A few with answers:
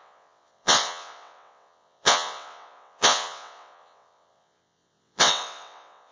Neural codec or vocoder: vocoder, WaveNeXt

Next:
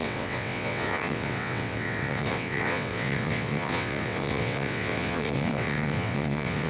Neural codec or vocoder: vocoder, WaveNeXt